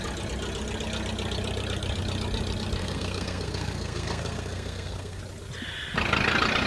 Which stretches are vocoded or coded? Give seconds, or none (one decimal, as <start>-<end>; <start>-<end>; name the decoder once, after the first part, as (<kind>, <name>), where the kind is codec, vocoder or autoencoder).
2.8-5.2 (codec, SNAC)